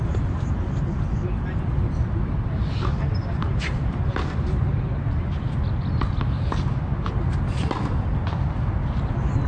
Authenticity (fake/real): real